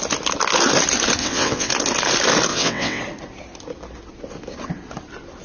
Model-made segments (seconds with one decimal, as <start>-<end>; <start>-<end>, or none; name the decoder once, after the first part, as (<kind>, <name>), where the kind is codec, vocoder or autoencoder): 1.2-1.7 (vocoder, WaveNeXt); 2.5-3.0